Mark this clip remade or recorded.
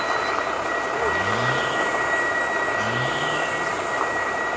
recorded